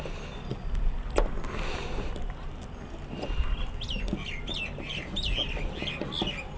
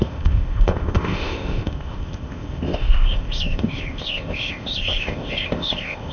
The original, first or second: first